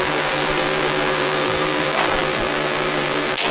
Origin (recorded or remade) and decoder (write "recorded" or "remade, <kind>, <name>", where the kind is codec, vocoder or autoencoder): remade, vocoder, BigVGAN v2